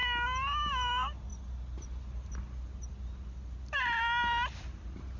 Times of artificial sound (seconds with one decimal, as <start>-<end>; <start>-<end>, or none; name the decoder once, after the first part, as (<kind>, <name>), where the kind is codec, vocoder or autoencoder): none